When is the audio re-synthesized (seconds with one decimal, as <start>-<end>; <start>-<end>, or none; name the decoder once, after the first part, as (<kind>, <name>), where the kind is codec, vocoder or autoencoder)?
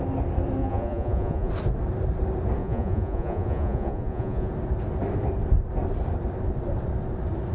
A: 0.6-1.5 (vocoder, Vocos); 2.6-4.5